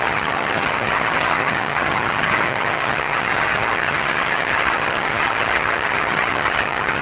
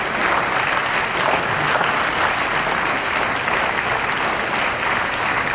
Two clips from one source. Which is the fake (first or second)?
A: first